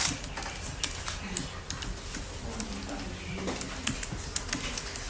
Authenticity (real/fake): real